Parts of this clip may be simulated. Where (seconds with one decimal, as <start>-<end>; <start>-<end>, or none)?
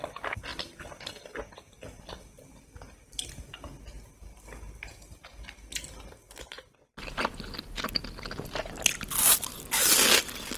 none